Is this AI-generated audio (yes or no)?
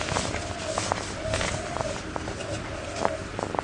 no